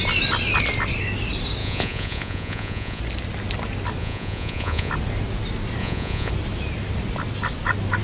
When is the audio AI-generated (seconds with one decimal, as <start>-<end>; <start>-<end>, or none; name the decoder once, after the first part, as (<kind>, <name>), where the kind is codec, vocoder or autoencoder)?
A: 1.6-3.0 (vocoder, Vocos); 4.0-4.9; 5.8-6.3